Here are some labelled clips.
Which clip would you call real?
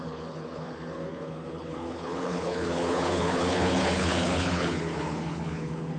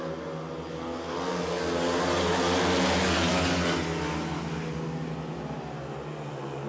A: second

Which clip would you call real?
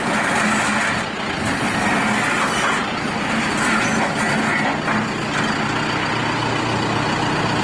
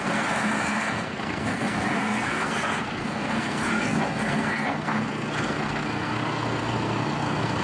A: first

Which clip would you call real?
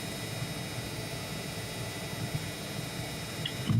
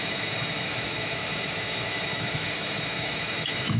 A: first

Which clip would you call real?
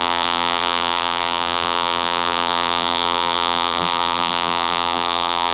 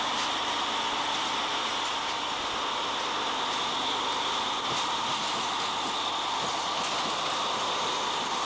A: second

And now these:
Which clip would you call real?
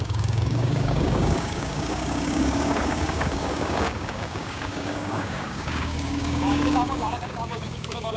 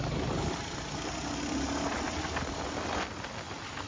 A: second